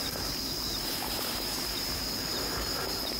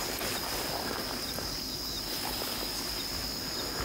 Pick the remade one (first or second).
first